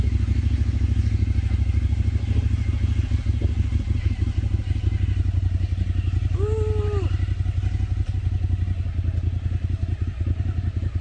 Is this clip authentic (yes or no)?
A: yes